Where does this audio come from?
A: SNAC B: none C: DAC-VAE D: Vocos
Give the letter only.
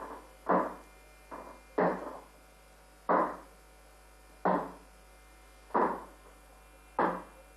B